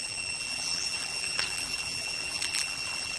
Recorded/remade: remade